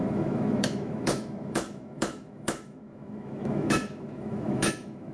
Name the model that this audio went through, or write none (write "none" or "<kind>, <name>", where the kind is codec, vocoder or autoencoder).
autoencoder, DAC-VAE